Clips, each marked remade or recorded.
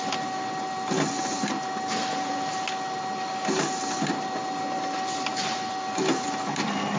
recorded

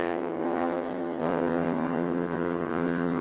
remade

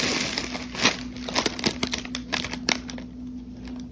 recorded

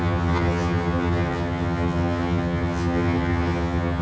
remade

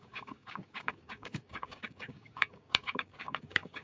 remade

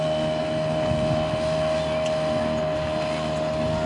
recorded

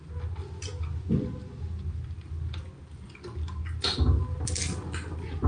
recorded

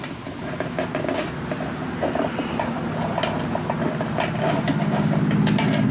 recorded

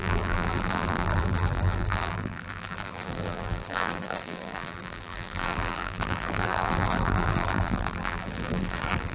remade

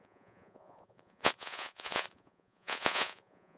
remade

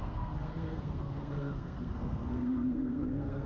remade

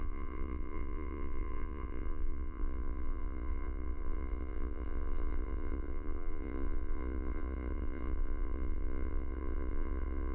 remade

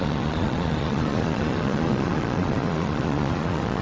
remade